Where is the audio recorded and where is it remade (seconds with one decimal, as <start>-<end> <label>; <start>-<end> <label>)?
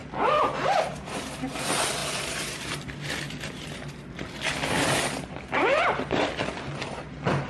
0.0-7.5 remade